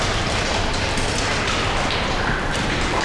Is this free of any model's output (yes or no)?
yes